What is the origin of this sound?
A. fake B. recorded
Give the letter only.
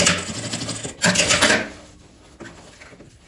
B